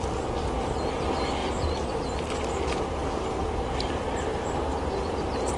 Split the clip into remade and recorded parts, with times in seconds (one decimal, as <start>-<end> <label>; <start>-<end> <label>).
0.0-5.6 recorded

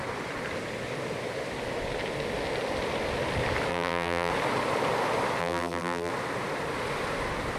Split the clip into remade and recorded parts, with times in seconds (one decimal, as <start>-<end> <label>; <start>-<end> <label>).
0.0-3.7 recorded; 3.7-4.3 remade; 4.3-5.4 recorded; 5.4-6.1 remade; 6.1-7.6 recorded

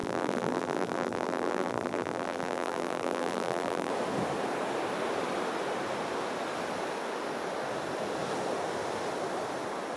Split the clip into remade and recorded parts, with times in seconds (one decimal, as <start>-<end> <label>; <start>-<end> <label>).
0.0-3.9 remade; 3.9-10.0 recorded

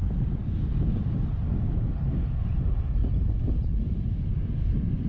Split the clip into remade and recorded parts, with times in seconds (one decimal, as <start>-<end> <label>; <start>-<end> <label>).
0.0-3.0 recorded; 3.0-5.1 remade

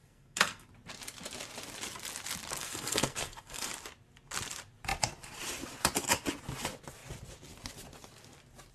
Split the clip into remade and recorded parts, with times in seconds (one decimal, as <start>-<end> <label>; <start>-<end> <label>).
0.0-0.7 remade; 0.7-2.6 recorded; 2.6-3.7 remade; 3.7-8.7 recorded

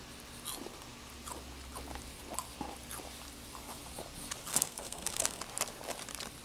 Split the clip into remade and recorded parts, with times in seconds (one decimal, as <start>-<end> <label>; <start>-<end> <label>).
0.0-4.5 recorded; 4.5-5.4 remade; 5.4-6.4 recorded